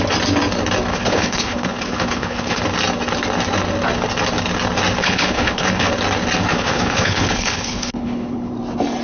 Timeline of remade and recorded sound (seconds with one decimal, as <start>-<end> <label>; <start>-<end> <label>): 0.0-0.9 recorded; 0.9-2.6 remade; 2.6-5.0 recorded; 5.0-5.9 remade; 5.9-6.5 recorded; 6.5-8.5 remade; 8.5-9.0 recorded